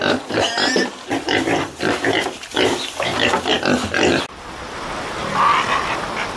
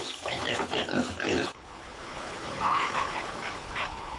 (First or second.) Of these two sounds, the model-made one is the second